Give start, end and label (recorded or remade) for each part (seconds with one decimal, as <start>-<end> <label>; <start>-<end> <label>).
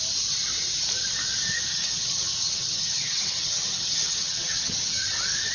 0.0-1.7 recorded; 1.7-5.0 remade; 5.0-5.5 recorded